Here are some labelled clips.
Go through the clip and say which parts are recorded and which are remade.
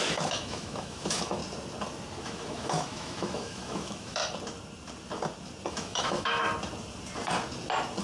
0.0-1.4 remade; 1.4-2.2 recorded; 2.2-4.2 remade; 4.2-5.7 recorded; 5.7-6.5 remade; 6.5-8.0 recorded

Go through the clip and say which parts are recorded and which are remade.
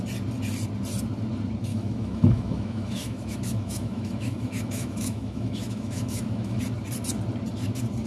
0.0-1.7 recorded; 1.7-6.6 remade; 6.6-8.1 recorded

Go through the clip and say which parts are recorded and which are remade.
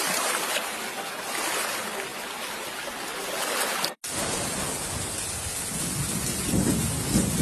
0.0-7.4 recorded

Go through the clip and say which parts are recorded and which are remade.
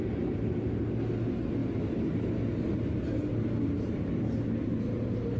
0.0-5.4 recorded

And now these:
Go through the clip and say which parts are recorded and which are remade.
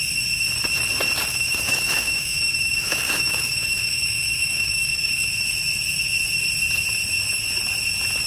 0.0-1.3 recorded; 1.3-5.3 remade; 5.3-8.3 recorded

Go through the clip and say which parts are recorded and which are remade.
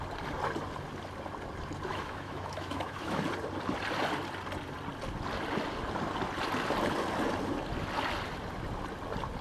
0.0-1.9 recorded; 1.9-3.2 remade; 3.2-9.4 recorded